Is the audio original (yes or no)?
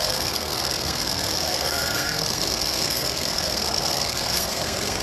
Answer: no